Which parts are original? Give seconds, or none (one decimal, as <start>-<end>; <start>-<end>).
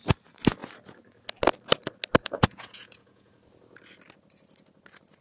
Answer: 0.0-2.2; 3.3-5.2